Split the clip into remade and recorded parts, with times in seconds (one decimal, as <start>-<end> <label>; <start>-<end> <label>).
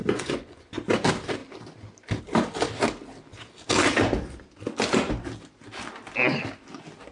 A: 0.0-0.7 remade; 0.7-7.1 recorded